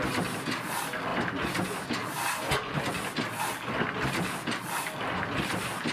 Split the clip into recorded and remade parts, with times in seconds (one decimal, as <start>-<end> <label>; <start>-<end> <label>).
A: 0.0-5.9 recorded